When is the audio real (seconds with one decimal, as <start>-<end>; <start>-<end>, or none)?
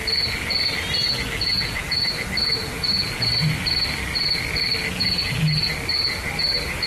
0.0-2.6; 5.7-6.9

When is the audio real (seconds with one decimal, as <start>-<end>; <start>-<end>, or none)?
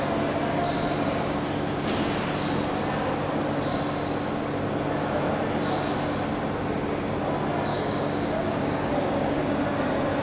0.0-7.7; 9.4-10.2